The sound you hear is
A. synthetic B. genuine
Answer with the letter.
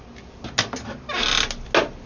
B